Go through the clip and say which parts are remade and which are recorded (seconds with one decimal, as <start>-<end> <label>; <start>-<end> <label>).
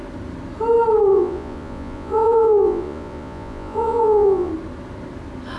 0.0-1.1 recorded; 1.1-4.5 remade; 4.5-5.6 recorded